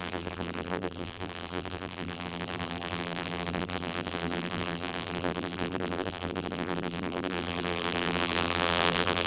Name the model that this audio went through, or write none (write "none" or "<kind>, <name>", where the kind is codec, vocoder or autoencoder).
vocoder, BigVGAN v2